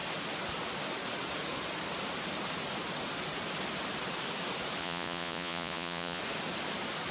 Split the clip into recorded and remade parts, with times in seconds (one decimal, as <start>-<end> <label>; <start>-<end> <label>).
0.0-4.8 recorded; 4.8-6.2 remade; 6.2-7.1 recorded